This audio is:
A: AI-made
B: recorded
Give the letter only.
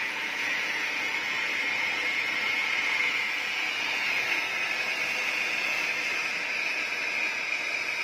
A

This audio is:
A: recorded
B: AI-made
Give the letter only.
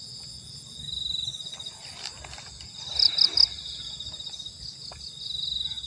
A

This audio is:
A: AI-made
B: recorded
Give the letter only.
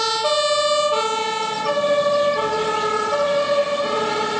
B